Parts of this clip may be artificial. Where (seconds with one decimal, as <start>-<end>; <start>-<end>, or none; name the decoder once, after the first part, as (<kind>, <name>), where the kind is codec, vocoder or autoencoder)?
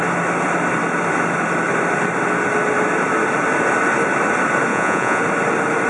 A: 4.7-5.2 (vocoder, Vocos)